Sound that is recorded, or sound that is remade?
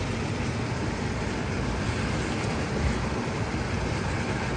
remade